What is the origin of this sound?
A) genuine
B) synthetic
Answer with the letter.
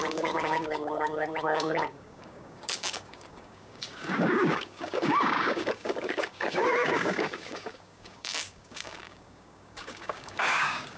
B